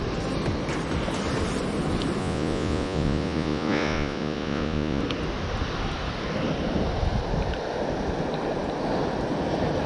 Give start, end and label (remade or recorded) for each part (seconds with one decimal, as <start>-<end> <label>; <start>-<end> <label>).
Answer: 0.0-2.2 recorded; 2.2-5.0 remade; 5.0-9.9 recorded